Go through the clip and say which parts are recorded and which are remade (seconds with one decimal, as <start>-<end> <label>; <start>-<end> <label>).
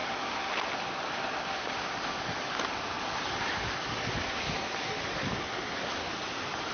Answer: 0.0-6.7 recorded